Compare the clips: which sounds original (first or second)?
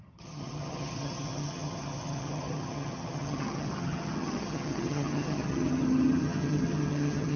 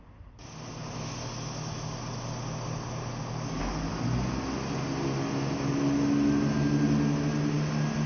second